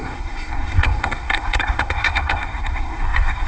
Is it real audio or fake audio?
fake